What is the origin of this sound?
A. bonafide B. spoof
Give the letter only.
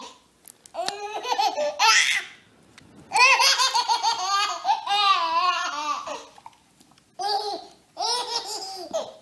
A